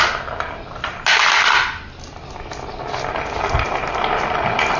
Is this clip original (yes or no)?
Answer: yes